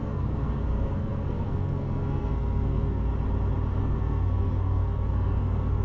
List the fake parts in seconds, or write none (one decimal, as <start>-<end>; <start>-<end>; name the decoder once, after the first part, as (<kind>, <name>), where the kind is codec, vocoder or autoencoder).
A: 0.0-3.1 (codec, SNAC); 3.8-5.8